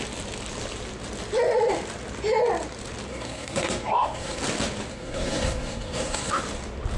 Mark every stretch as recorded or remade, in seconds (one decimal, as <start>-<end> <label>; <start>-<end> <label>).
0.0-3.1 recorded; 3.1-4.4 remade; 4.4-4.9 recorded; 4.9-6.4 remade; 6.4-7.0 recorded